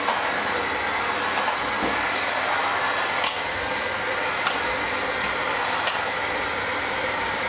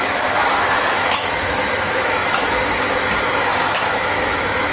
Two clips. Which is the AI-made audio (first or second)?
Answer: second